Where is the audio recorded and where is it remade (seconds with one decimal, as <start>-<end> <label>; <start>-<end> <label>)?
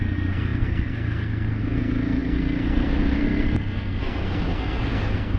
0.0-5.4 remade